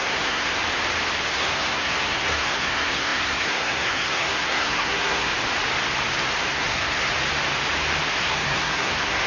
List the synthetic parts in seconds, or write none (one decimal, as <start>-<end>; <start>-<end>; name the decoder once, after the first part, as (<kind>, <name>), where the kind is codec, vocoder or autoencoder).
0.0-0.5 (codec, SNAC); 1.3-5.3; 6.5-7.1; 8.2-9.3